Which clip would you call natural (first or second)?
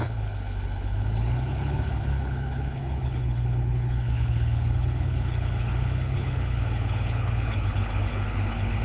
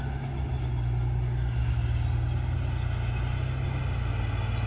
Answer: second